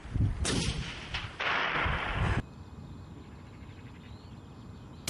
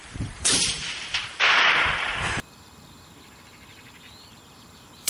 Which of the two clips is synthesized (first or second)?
second